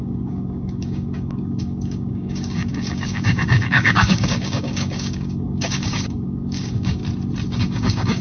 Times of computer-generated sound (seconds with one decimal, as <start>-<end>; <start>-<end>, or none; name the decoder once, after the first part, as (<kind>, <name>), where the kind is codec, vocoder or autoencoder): 0.0-7.0 (codec, DAC); 7.6-8.2